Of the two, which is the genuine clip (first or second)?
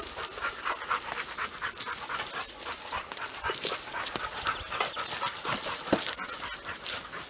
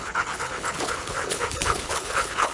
first